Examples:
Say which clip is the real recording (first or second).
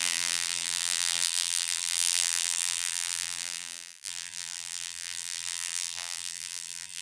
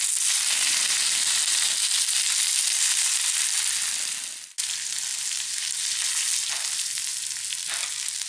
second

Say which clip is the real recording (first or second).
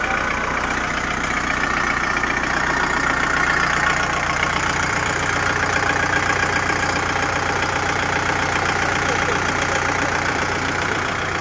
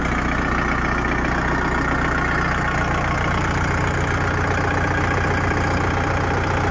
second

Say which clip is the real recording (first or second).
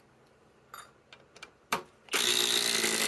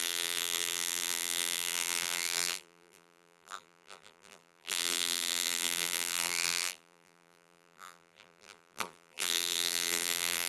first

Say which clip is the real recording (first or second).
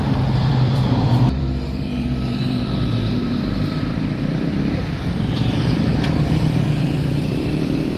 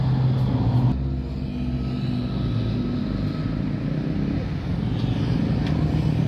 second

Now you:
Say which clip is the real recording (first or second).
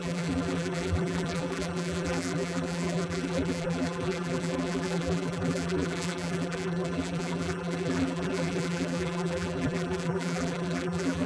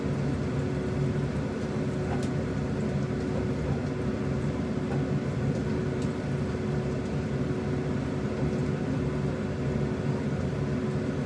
second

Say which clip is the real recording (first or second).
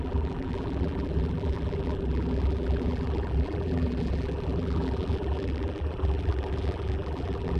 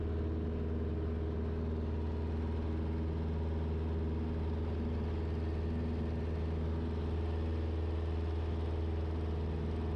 second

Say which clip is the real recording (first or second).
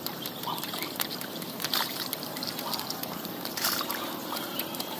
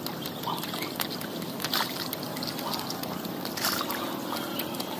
second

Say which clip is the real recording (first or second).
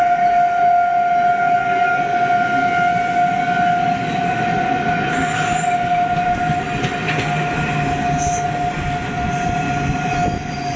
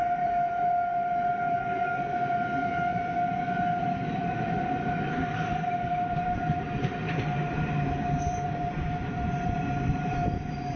first